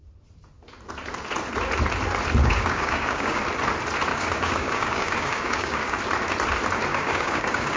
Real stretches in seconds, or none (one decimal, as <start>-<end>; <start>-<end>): 0.0-2.4; 3.4-4.1; 6.0-6.9